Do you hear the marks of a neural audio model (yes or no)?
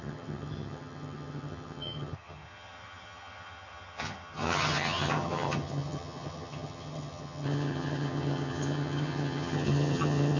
yes